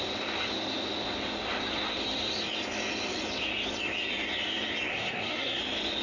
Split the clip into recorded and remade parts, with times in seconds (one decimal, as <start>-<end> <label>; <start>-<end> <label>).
0.0-4.9 recorded; 4.9-5.6 remade; 5.6-6.0 recorded